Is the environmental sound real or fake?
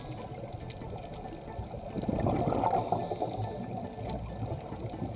real